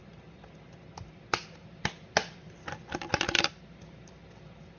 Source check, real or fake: real